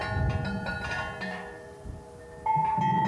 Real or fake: real